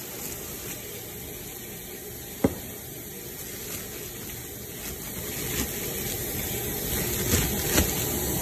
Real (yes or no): yes